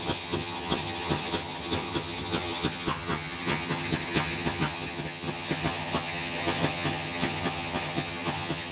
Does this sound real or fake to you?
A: fake